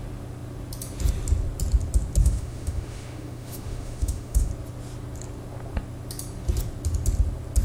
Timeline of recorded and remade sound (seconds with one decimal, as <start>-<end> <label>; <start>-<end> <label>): 0.0-2.2 recorded; 2.2-4.5 remade; 4.5-7.6 recorded